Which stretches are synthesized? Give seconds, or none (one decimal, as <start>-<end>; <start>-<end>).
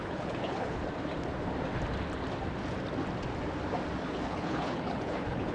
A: 0.0-0.8; 4.1-5.5